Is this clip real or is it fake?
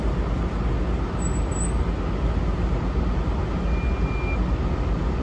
real